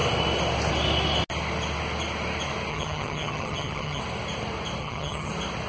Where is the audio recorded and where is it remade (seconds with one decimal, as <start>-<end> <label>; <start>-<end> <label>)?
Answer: 0.0-2.7 recorded; 2.7-4.0 remade; 4.0-4.8 recorded; 4.8-5.3 remade; 5.3-5.7 recorded